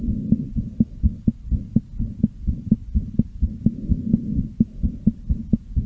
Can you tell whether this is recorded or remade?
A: recorded